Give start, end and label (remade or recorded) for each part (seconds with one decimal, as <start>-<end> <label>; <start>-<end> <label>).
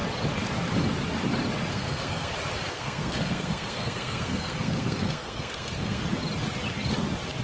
0.0-1.7 recorded; 1.7-2.3 remade; 2.3-2.7 recorded; 2.7-6.0 remade; 6.0-7.4 recorded